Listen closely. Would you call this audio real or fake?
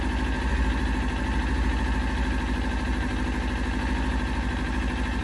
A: real